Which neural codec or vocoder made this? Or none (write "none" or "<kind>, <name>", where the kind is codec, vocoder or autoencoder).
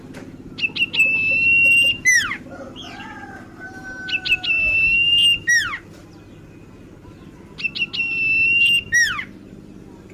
none